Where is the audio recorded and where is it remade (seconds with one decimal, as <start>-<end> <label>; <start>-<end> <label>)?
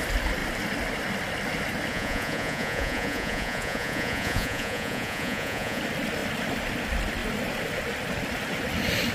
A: 0.0-1.9 recorded; 1.9-5.8 remade; 5.8-9.1 recorded